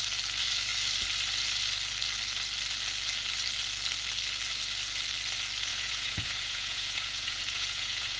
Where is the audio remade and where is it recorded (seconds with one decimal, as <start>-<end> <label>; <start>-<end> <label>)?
0.0-5.7 recorded; 5.7-8.2 remade